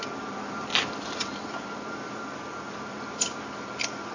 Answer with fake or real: fake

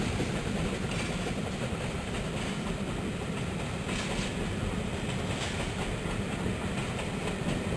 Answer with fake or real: real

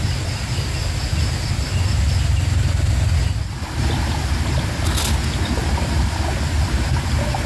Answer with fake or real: real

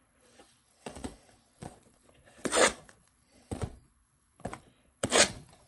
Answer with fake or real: fake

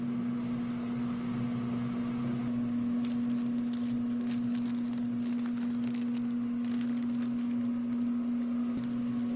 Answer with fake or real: real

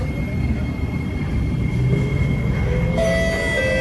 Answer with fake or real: real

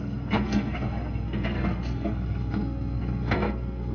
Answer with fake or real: fake